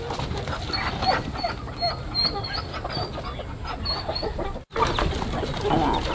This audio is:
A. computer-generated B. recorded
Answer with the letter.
B